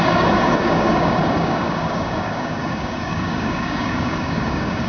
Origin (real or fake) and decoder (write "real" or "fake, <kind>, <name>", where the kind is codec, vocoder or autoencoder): fake, codec, DAC